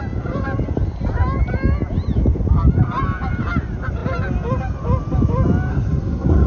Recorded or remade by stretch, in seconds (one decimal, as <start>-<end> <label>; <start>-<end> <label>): 0.0-5.7 recorded; 5.7-6.5 remade